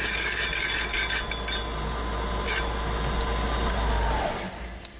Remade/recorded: recorded